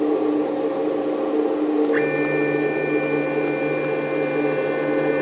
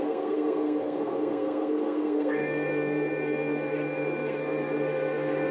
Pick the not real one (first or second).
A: second